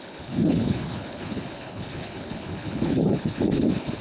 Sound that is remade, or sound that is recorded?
remade